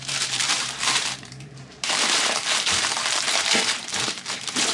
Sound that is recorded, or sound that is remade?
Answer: remade